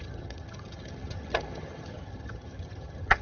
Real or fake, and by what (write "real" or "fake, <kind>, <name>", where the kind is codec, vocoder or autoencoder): fake, vocoder, HiFi-GAN